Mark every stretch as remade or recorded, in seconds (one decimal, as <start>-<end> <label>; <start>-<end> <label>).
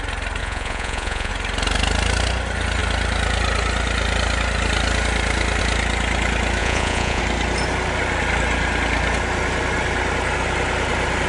0.0-0.4 recorded; 0.4-1.3 remade; 1.3-6.6 recorded; 6.6-7.2 remade; 7.2-11.3 recorded